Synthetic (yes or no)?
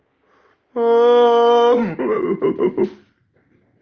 no